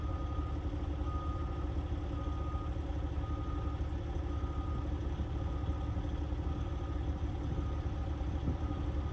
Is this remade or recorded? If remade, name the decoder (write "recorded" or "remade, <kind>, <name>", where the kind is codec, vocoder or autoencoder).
recorded